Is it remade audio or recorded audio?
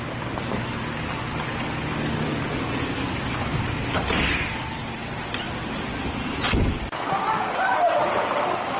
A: recorded